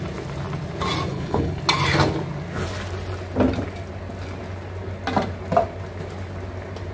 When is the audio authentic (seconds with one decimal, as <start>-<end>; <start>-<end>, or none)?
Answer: 0.0-1.1; 1.6-6.9